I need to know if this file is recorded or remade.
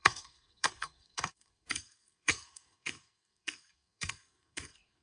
remade